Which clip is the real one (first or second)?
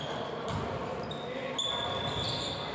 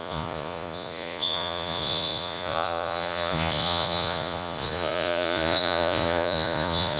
first